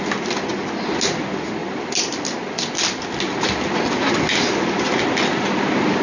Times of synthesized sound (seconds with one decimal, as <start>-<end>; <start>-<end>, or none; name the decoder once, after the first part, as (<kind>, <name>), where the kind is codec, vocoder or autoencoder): none